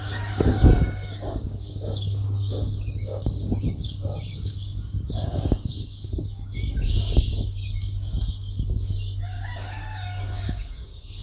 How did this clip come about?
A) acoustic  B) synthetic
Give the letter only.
B